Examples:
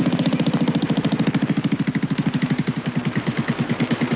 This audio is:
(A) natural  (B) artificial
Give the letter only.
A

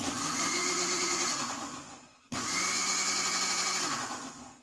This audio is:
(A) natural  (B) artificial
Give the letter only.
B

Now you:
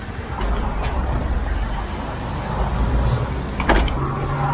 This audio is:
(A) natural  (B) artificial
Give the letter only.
A